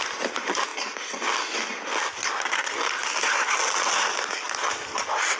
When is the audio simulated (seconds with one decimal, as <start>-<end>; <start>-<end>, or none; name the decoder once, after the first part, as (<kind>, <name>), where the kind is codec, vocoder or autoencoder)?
none

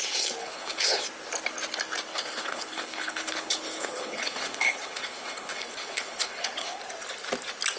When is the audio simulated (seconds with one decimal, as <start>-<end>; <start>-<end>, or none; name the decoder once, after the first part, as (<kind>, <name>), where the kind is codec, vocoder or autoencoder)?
0.4-1.0 (codec, HILCodec); 2.1-6.8

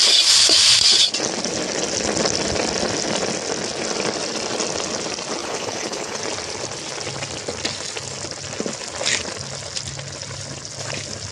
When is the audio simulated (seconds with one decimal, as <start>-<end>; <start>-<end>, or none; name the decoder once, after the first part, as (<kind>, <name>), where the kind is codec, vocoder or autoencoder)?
5.4-6.2 (codec, HILCodec)

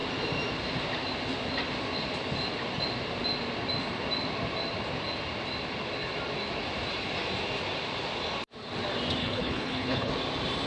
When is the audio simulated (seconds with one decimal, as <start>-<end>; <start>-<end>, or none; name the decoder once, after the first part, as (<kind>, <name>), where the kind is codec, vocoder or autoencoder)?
9.2-10.1 (codec, HILCodec)

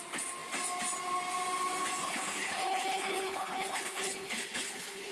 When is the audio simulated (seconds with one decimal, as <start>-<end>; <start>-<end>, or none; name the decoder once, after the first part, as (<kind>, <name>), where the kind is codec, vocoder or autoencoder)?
2.0-5.1 (codec, HILCodec)

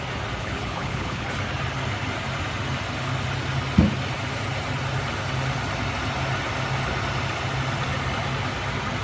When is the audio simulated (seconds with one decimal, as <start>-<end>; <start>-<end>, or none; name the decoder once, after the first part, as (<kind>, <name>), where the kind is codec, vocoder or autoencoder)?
0.4-1.3 (codec, HILCodec)